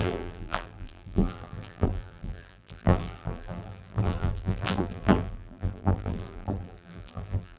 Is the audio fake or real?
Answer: fake